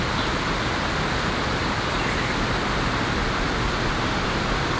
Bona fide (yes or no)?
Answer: yes